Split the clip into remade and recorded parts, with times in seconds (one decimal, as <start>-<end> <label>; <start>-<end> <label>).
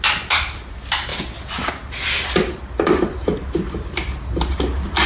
0.0-5.1 recorded